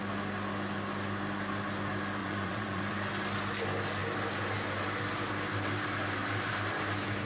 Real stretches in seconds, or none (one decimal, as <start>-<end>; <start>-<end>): 0.0-2.2; 2.8-7.3